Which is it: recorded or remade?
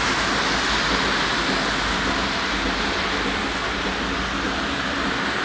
recorded